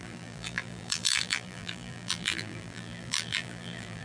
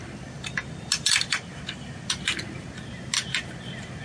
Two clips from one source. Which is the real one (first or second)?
second